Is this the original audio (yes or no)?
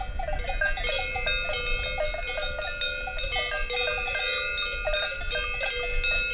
yes